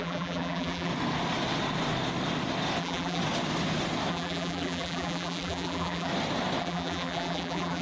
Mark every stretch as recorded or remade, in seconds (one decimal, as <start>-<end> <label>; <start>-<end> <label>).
0.0-0.9 remade; 0.9-2.8 recorded; 2.8-3.2 remade; 3.2-4.1 recorded; 4.1-6.1 remade; 6.1-6.6 recorded; 6.6-7.8 remade